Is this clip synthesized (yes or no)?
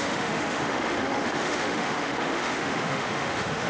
yes